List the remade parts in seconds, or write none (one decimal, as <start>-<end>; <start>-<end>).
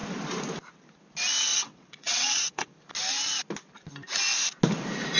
1.5-2.7